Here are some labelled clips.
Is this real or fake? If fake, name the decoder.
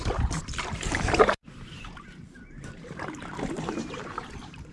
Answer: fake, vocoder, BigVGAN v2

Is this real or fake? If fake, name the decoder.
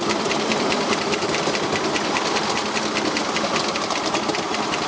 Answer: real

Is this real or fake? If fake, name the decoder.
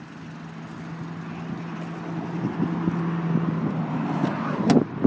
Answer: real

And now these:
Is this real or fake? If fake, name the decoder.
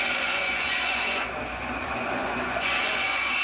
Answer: fake, vocoder, Vocos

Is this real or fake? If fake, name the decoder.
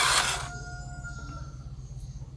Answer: real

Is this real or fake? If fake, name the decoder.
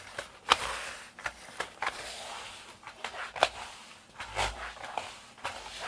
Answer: real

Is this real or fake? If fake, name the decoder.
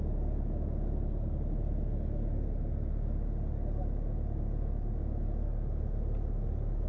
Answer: real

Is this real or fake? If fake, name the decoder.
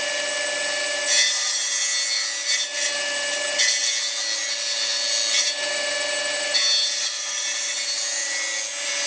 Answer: real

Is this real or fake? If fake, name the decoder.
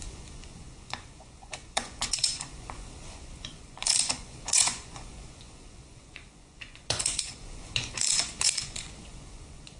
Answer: fake, vocoder, Vocos